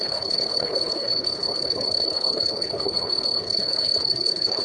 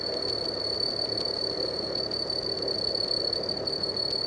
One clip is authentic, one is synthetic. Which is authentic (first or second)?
second